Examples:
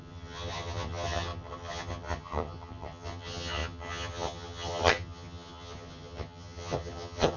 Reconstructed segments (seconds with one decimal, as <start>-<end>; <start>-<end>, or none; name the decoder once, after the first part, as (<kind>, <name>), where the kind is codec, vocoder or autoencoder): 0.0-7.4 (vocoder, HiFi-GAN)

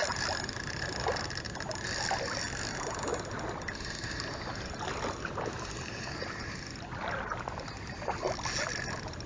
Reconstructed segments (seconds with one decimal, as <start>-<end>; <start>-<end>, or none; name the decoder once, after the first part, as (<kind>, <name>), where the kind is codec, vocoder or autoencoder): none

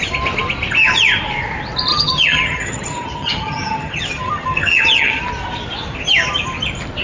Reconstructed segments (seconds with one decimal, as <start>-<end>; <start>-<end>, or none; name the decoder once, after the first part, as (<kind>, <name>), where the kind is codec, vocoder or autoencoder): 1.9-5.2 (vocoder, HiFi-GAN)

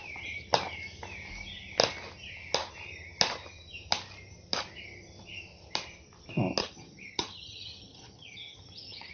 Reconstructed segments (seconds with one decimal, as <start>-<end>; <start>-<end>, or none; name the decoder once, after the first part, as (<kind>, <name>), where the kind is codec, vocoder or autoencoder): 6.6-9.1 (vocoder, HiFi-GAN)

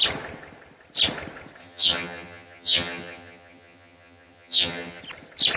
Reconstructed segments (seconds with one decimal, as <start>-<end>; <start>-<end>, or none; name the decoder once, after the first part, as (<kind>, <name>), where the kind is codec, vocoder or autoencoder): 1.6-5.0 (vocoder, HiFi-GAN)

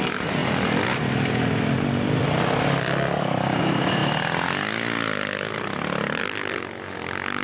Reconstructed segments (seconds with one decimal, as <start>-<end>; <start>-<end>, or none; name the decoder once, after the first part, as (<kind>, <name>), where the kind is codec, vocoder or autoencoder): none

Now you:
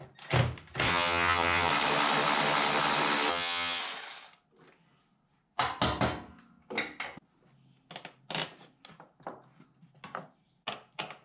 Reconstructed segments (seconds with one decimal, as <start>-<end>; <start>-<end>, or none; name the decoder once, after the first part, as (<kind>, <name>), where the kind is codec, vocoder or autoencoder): 0.9-1.7 (vocoder, HiFi-GAN); 3.3-3.8

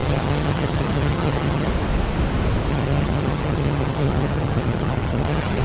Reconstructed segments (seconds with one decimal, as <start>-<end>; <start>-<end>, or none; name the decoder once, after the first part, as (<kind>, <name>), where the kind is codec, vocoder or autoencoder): 0.0-1.7 (vocoder, HiFi-GAN); 2.7-5.6